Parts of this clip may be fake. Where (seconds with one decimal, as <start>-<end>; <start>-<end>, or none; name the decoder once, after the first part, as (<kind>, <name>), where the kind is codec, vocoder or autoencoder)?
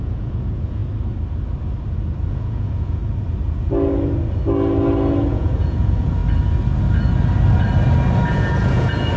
0.0-0.8 (vocoder, Vocos); 2.3-3.0; 5.3-6.2; 8.3-9.2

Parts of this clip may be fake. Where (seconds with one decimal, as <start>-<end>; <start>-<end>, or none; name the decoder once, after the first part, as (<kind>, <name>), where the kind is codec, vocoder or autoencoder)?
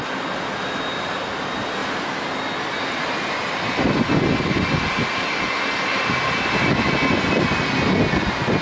none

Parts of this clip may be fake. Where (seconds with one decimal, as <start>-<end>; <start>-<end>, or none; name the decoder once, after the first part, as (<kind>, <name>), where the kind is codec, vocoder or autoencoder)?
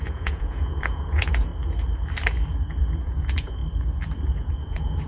0.0-1.5 (vocoder, Vocos); 3.0-3.6; 4.5-5.1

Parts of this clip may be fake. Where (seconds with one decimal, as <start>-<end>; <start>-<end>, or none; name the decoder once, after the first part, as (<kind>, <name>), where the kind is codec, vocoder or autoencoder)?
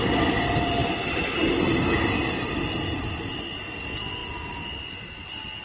none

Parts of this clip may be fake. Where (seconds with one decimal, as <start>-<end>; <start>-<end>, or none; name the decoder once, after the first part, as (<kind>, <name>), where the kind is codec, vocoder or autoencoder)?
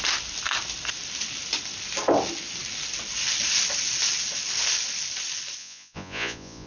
5.6-6.7 (vocoder, Vocos)